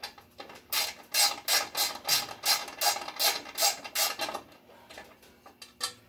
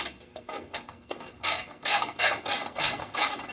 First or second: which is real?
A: first